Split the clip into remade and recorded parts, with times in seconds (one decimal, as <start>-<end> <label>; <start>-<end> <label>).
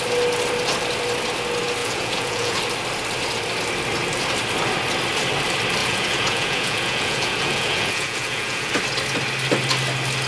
0.0-1.8 recorded; 1.8-2.6 remade; 2.6-5.8 recorded; 5.8-8.7 remade; 8.7-10.3 recorded